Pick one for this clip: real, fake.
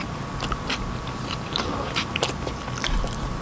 real